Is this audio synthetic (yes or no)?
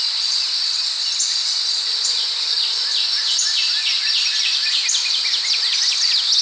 no